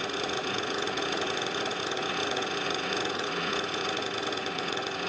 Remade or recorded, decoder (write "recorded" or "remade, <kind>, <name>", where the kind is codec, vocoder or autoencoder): remade, vocoder, Vocos